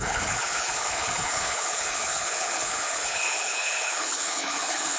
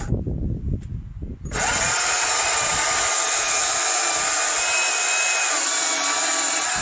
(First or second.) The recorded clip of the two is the second